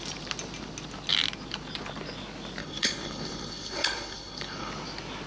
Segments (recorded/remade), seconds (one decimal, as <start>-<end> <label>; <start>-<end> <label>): 0.0-2.6 recorded; 2.6-4.7 remade; 4.7-5.3 recorded